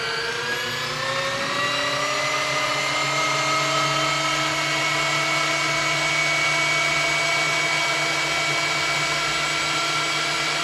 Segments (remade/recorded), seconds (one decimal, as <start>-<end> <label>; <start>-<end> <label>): 0.0-10.6 recorded